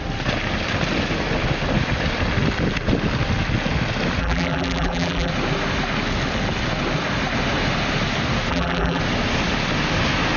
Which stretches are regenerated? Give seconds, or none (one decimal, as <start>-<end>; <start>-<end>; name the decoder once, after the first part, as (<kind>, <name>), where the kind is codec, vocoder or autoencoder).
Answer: 4.2-5.3 (vocoder, BigVGAN v2); 8.5-9.0